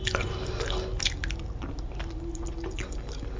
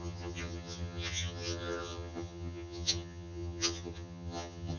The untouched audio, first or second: first